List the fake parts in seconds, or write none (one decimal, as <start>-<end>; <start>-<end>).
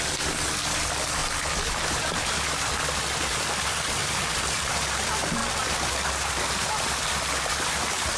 none